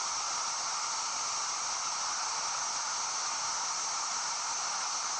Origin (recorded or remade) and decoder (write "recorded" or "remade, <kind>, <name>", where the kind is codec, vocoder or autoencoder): recorded